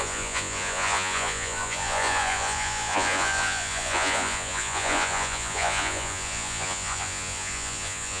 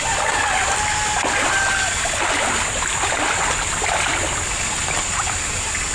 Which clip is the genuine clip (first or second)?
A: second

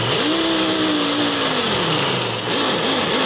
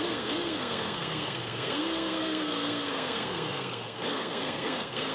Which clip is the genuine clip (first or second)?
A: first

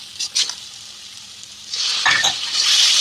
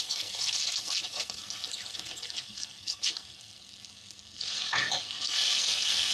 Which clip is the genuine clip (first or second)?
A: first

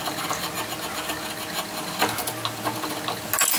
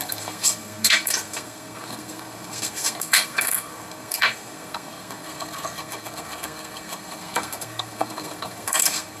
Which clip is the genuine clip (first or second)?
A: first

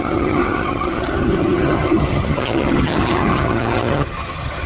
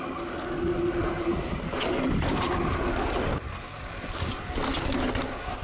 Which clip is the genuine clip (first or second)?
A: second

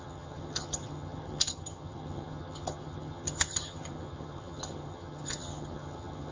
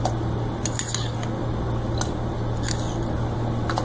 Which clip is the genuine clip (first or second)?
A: second